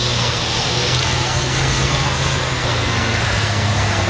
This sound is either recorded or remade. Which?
remade